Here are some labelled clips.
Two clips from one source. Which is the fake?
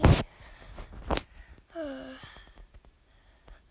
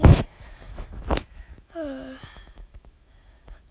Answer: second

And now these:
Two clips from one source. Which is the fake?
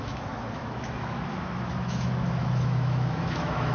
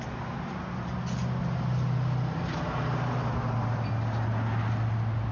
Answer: first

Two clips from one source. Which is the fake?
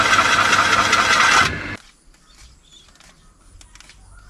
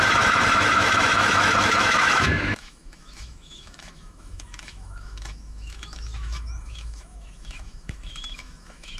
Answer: second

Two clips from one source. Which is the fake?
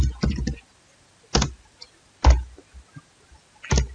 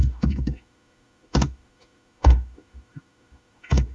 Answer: second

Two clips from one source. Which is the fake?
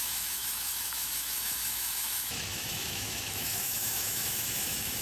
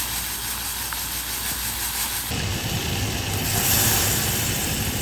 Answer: first